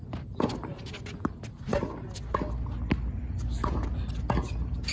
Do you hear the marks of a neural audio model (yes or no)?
no